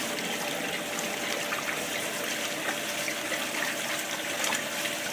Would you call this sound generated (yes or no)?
no